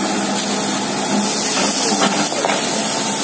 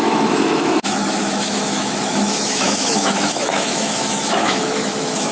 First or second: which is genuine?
first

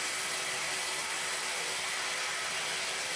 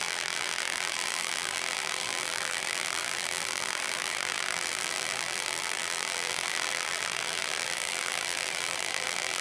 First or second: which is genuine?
first